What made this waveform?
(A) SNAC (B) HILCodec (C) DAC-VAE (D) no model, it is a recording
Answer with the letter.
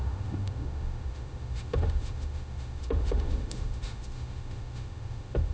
C